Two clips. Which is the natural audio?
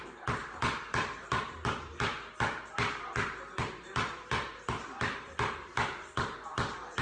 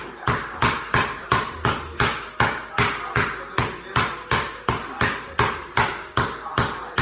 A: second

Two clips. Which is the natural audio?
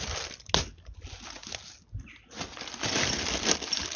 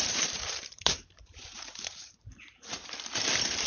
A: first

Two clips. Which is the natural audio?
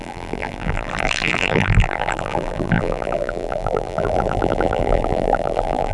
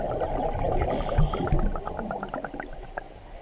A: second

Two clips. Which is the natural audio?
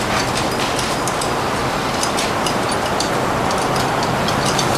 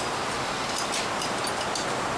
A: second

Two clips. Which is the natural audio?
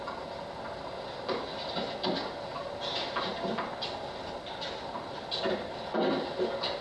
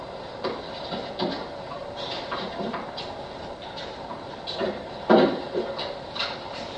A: first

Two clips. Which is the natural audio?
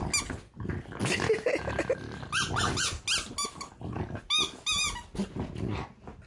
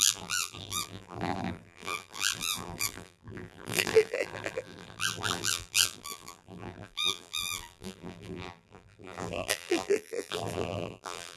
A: first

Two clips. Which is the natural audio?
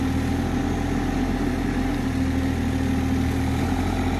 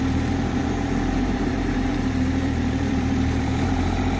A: first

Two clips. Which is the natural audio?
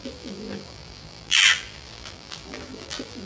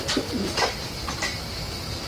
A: second